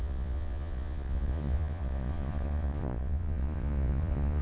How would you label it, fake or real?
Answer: fake